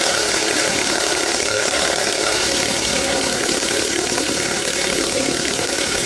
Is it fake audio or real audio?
fake